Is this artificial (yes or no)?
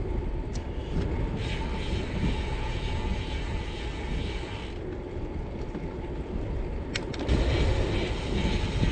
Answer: no